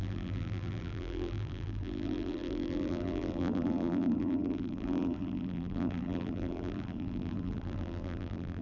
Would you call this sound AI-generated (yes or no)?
yes